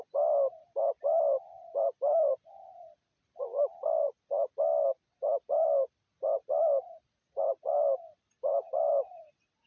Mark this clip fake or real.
real